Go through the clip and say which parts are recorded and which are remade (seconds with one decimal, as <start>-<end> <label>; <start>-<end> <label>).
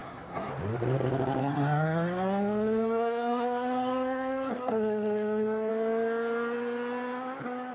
0.0-0.5 remade; 0.5-1.4 recorded; 1.4-5.7 remade; 5.7-7.7 recorded